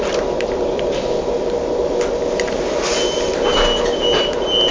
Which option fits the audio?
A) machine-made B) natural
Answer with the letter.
B